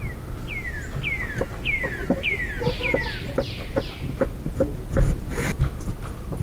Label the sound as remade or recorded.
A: remade